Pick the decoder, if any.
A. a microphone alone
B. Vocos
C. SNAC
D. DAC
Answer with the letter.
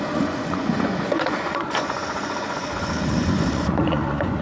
B